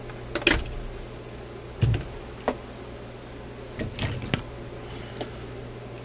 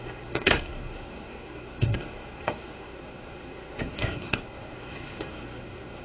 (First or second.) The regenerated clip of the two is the second